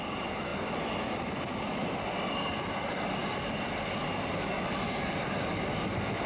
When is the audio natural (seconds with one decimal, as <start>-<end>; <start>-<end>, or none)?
0.0-6.3